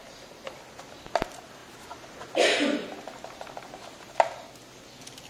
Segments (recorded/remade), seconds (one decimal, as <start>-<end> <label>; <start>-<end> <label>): 0.0-5.3 recorded